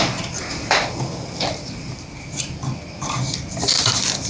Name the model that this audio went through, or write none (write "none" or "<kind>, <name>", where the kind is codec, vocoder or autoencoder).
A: vocoder, BigVGAN v2